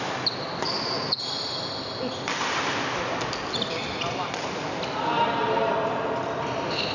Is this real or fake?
real